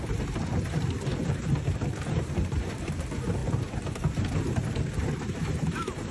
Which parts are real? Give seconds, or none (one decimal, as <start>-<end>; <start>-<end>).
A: 1.1-2.1; 3.4-5.0